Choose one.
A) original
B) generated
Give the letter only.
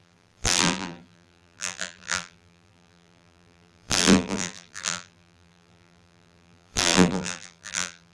B